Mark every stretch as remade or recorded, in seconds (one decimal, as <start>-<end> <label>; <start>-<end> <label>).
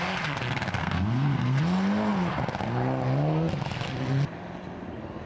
0.0-0.8 recorded; 0.8-1.6 remade; 1.6-5.3 recorded